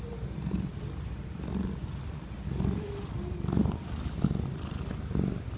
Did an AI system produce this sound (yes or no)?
no